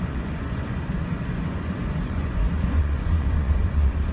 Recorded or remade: remade